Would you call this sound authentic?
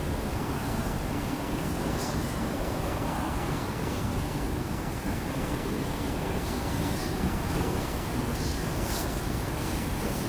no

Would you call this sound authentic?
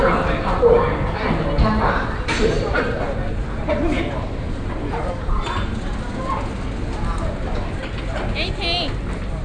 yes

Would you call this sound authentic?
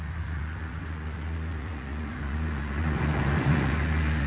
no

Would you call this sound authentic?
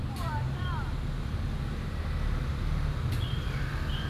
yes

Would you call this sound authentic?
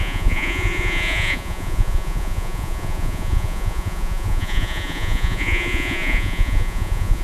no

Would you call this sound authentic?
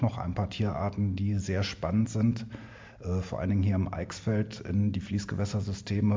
yes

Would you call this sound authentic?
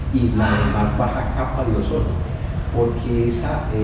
yes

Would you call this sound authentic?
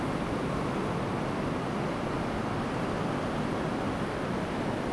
yes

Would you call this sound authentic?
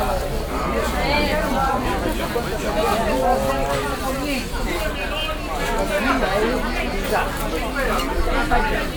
yes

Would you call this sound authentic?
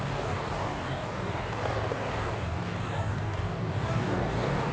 no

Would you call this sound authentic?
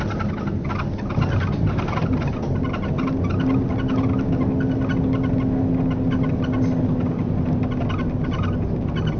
yes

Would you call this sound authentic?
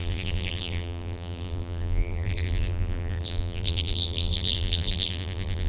no